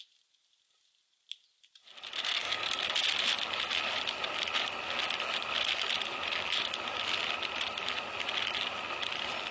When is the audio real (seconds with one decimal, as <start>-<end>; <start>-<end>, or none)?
0.0-2.2; 2.8-9.5